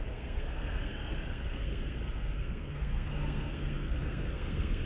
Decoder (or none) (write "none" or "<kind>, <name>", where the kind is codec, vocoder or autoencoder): codec, SNAC